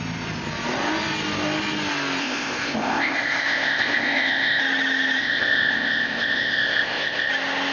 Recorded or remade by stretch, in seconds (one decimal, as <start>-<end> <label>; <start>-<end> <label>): 0.0-2.2 recorded; 2.2-4.6 remade; 4.6-5.2 recorded; 5.2-7.3 remade; 7.3-7.7 recorded